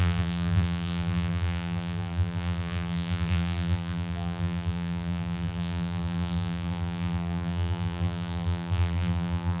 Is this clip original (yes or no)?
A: no